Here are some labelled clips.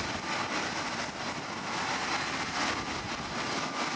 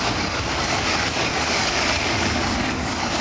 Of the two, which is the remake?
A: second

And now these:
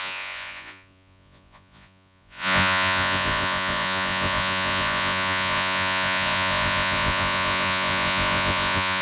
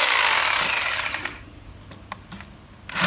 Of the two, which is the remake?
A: first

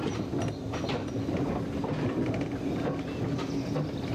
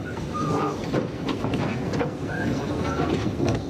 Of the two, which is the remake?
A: second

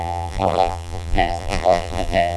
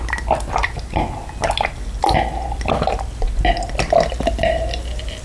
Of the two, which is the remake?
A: first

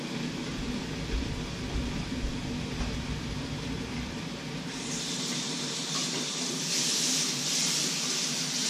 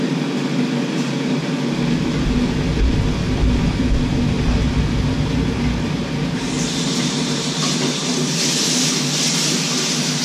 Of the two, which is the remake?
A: first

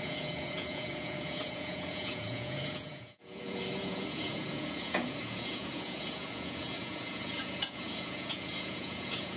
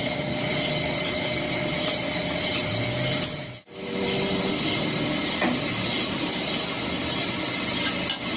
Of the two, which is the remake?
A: first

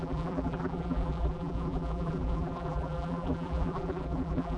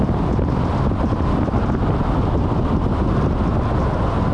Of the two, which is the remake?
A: first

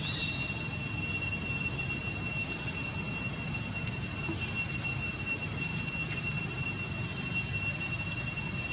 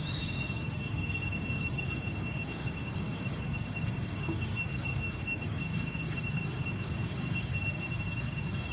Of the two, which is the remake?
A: second